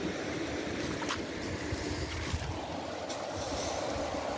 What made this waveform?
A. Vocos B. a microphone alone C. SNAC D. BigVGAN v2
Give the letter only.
B